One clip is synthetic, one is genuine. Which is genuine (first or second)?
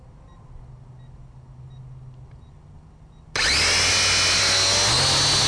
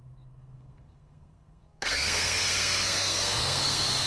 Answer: first